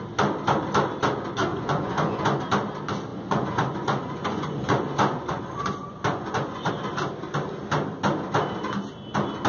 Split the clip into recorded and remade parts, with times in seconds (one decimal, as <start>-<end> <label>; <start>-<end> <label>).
0.0-1.5 recorded; 1.5-2.4 remade; 2.4-3.1 recorded; 3.1-6.7 remade; 6.7-9.5 recorded